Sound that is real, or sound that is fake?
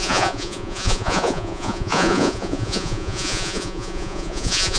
fake